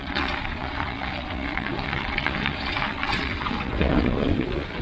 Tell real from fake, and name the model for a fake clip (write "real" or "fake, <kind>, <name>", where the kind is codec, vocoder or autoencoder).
fake, vocoder, WaveNeXt